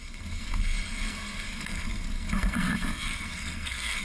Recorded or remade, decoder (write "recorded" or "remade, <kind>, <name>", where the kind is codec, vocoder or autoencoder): remade, codec, SNAC